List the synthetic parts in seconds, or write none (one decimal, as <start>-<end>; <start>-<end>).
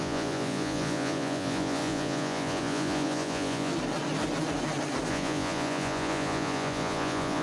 0.0-3.7; 5.1-7.4